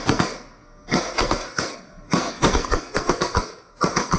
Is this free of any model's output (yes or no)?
no